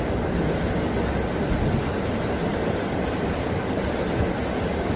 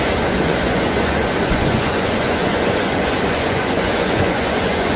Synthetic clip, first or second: second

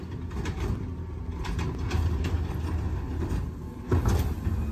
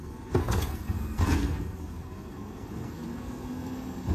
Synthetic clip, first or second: second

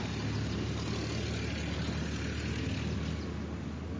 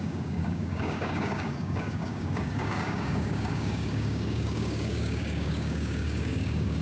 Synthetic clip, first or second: second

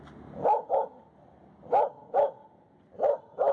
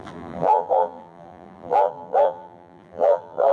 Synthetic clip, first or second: second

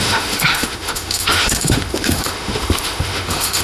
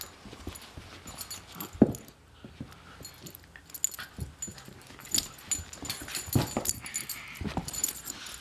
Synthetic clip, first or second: first